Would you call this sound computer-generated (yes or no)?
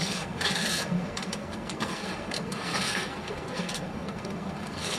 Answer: yes